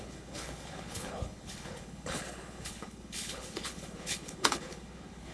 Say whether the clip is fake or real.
fake